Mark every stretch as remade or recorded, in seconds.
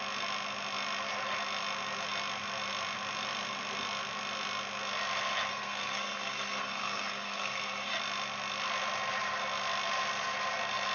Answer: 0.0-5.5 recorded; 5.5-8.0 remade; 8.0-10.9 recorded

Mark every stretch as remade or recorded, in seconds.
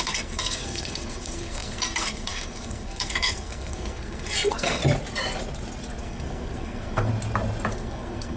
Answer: 0.0-4.8 remade; 4.8-6.0 recorded; 6.0-7.1 remade; 7.1-7.7 recorded; 7.7-8.4 remade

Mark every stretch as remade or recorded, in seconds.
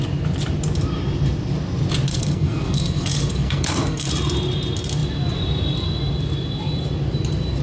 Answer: 0.0-2.1 recorded; 2.1-4.1 remade; 4.1-7.6 recorded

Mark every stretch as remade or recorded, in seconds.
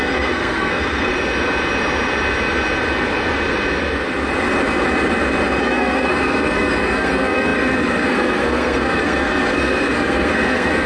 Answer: 0.0-1.1 remade; 1.1-5.6 recorded; 5.6-10.9 remade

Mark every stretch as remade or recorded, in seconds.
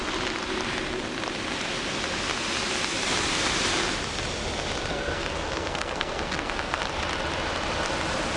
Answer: 0.0-4.9 recorded; 4.9-6.8 remade; 6.8-8.4 recorded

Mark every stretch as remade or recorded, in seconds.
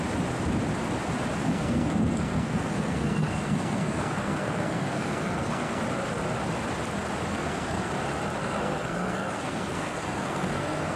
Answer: 0.0-1.4 recorded; 1.4-5.8 remade; 5.8-7.3 recorded; 7.3-7.9 remade; 7.9-8.4 recorded; 8.4-11.0 remade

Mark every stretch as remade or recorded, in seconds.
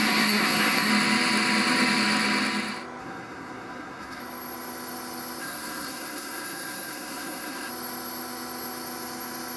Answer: 0.0-0.9 remade; 0.9-3.0 recorded; 3.0-4.2 remade; 4.2-5.4 recorded; 5.4-7.7 remade; 7.7-9.6 recorded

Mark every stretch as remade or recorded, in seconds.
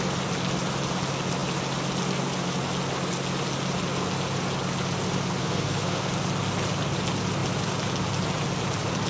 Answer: 0.0-5.4 recorded; 5.4-6.1 remade; 6.1-9.1 recorded